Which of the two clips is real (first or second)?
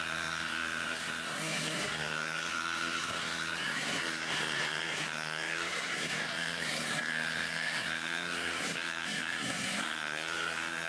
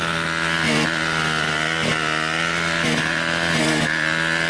second